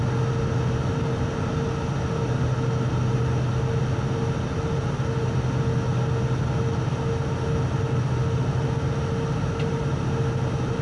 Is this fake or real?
real